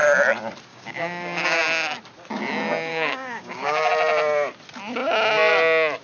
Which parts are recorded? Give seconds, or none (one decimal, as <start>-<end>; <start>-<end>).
0.0-0.7; 1.6-2.9; 3.9-6.0